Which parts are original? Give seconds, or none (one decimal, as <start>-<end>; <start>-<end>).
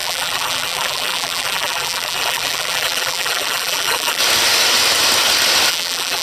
4.2-5.7